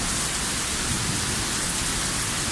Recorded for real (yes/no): yes